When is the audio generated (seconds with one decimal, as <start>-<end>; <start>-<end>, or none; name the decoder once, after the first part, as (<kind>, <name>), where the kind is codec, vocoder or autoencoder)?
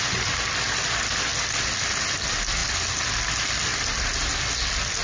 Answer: none